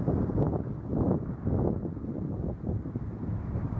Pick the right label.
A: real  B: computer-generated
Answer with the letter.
A